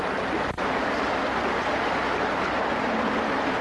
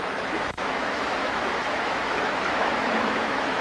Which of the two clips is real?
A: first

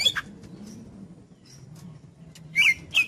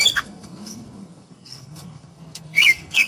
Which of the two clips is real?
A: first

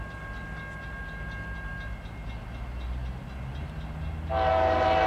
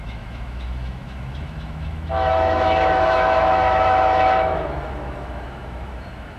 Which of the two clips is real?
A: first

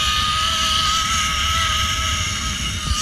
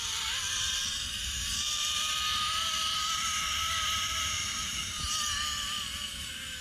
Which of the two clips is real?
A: first